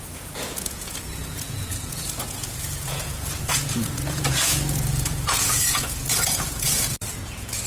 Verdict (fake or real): fake